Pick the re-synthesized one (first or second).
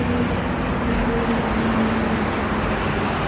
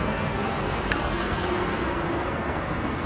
second